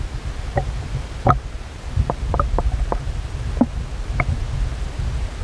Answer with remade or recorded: recorded